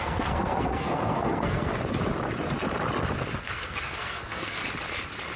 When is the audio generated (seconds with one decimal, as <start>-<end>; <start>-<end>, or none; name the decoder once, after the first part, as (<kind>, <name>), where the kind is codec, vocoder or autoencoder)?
0.0-1.7 (codec, SNAC); 3.4-4.6